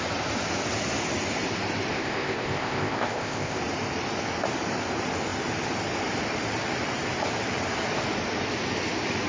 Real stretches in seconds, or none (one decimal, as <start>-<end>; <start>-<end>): 0.0-1.9; 3.6-9.3